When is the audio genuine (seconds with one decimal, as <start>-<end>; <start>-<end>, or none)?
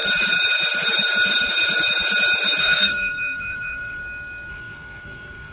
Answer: 0.0-2.6; 4.0-4.5